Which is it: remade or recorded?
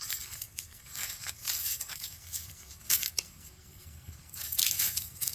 remade